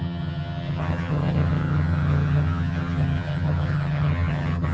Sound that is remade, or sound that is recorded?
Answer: remade